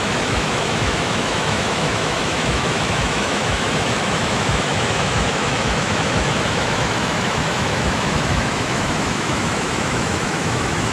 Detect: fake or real fake